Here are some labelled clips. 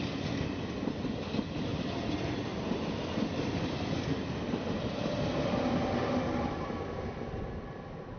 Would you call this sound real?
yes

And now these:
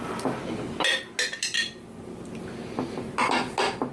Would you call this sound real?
yes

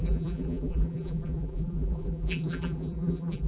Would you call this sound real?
no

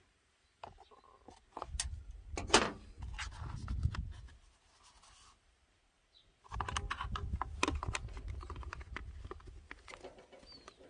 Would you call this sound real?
yes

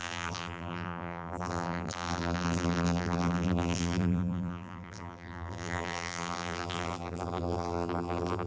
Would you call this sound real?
no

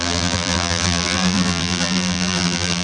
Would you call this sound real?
no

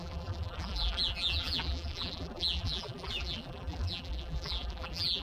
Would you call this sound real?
no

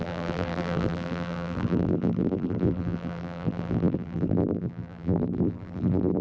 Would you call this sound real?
no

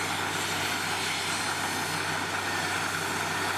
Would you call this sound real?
yes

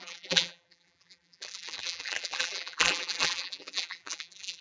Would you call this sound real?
no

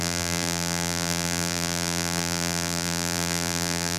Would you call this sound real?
no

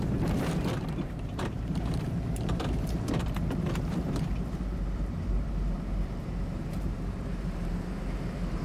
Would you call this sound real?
no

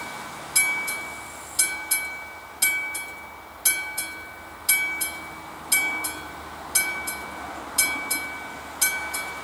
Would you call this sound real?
yes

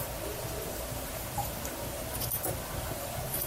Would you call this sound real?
no